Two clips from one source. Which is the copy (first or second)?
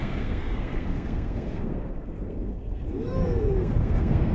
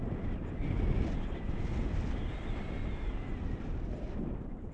first